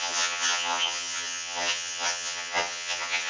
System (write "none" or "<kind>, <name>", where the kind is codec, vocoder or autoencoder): vocoder, HiFi-GAN